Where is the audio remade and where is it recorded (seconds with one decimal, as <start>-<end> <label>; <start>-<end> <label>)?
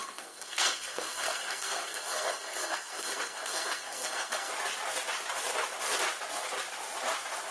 0.0-4.5 remade; 4.5-7.5 recorded